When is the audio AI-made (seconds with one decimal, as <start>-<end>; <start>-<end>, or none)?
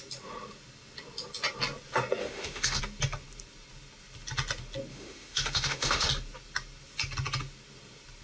2.2-2.8; 4.9-6.1